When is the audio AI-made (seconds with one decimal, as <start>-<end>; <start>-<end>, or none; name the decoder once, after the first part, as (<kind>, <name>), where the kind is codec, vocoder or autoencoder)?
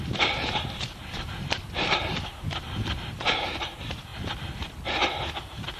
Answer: 0.0-4.1 (vocoder, BigVGAN v2)